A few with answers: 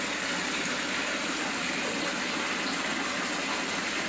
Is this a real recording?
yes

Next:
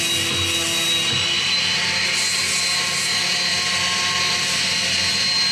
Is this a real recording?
yes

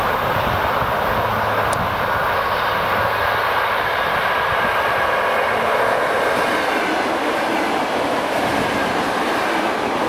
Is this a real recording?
yes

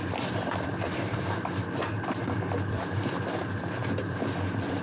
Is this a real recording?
no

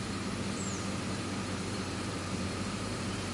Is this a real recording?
no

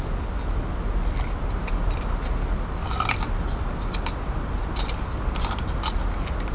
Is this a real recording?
yes